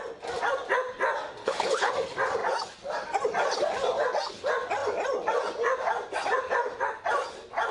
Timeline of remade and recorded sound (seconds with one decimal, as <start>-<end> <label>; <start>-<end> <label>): 0.0-1.4 recorded; 1.4-1.9 remade; 1.9-7.7 recorded